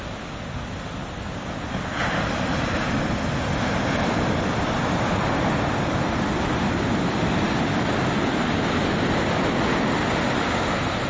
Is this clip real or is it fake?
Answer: real